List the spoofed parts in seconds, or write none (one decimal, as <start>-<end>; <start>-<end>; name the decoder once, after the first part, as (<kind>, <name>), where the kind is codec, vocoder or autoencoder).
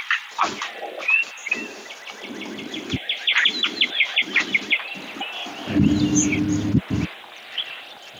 none